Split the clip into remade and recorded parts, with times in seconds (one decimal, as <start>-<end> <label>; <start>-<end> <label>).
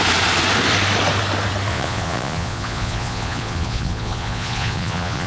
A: 0.0-1.7 recorded; 1.7-5.3 remade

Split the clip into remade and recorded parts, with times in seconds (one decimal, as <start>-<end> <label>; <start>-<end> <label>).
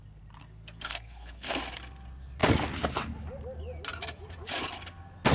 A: 0.0-0.4 recorded; 0.4-1.6 remade; 1.6-5.3 recorded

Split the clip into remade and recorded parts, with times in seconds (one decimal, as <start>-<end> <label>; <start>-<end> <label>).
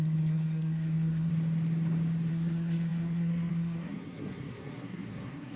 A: 0.0-1.3 remade; 1.3-2.3 recorded; 2.3-5.6 remade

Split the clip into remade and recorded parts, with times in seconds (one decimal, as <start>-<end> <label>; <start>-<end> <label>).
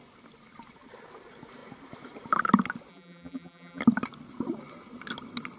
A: 0.0-2.9 recorded; 2.9-3.8 remade; 3.8-5.6 recorded